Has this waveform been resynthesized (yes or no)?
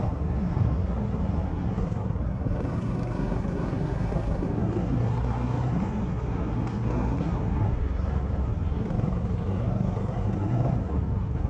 yes